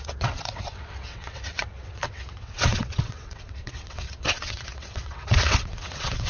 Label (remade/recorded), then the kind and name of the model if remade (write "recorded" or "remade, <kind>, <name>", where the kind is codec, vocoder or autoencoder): remade, vocoder, WaveNeXt